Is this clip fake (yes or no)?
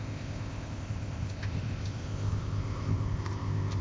yes